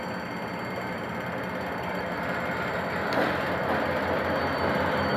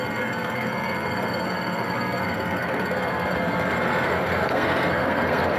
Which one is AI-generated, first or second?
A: second